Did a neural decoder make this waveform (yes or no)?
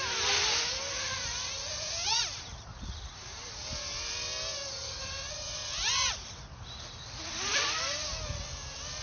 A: no